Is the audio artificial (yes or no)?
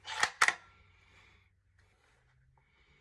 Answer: no